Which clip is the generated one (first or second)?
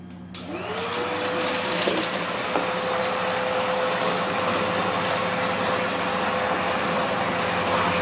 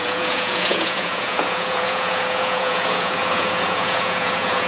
second